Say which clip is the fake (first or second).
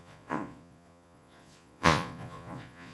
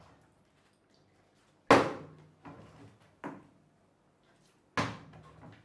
first